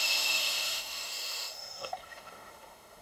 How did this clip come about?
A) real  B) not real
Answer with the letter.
B